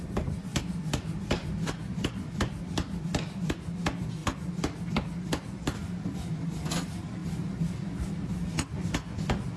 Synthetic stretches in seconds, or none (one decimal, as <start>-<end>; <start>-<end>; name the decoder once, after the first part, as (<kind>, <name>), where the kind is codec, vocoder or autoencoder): none